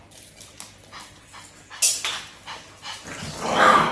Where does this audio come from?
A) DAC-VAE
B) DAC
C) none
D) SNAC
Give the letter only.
C